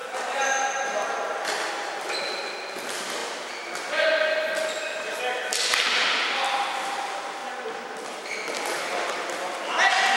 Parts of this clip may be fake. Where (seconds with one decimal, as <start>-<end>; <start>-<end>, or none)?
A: 0.0-1.7